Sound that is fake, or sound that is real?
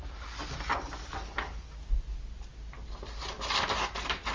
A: real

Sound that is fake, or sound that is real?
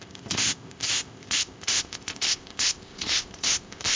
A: fake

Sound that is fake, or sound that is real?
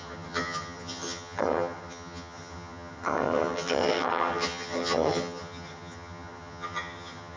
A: fake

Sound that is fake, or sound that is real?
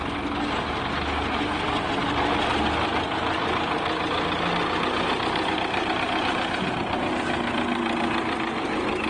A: real